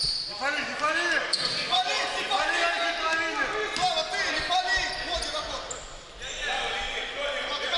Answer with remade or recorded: recorded